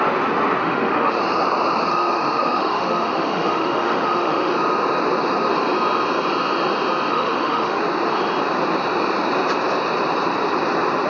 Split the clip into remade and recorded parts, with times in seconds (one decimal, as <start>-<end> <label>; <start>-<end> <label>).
0.0-0.6 recorded; 0.6-1.2 remade; 1.2-1.9 recorded; 1.9-4.5 remade; 4.5-7.1 recorded; 7.1-7.8 remade; 7.8-11.1 recorded